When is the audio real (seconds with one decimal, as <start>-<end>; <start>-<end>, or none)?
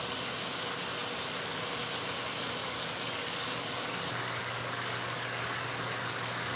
0.0-2.6